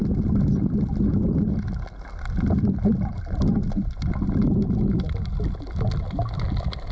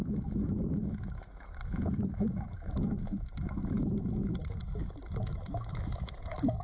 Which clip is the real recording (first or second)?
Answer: first